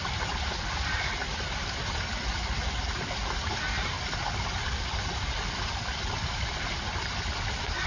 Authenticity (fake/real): real